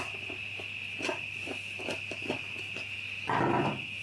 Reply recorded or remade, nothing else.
recorded